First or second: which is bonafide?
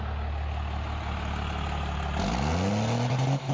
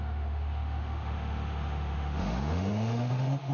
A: first